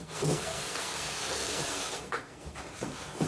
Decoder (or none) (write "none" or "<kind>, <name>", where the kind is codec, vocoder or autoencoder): codec, SNAC